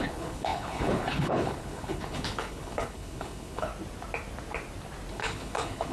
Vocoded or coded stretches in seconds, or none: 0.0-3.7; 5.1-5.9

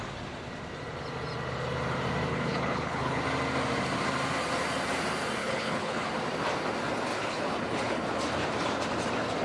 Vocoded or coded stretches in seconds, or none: 2.3-3.2; 5.4-6.1; 7.1-8.0

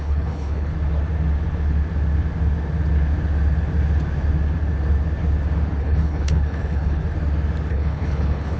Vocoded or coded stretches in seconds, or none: 0.0-0.7; 5.8-7.0; 7.7-8.6

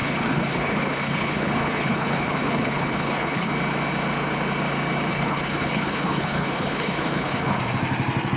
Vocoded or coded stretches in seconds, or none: 0.0-3.5; 5.1-7.6